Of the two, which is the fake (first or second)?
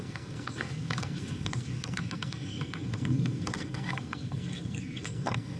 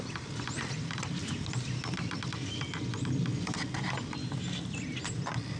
first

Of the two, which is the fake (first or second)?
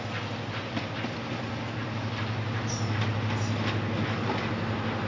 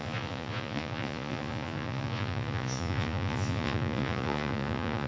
second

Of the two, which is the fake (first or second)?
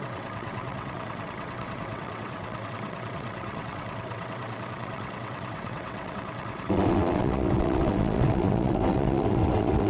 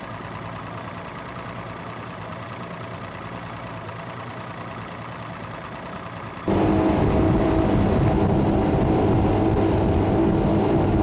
first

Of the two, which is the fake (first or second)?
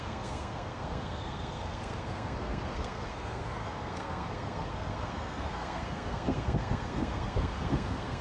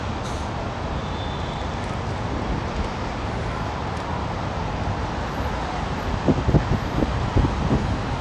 first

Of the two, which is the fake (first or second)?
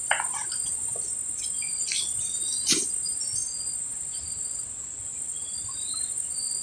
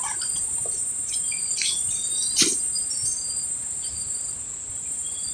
second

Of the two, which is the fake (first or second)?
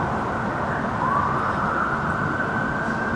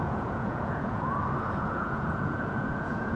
second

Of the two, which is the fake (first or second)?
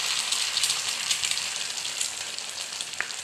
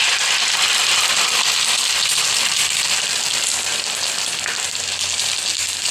first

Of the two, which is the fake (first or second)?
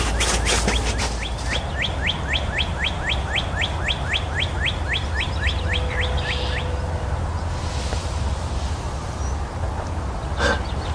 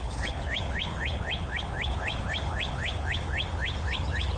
second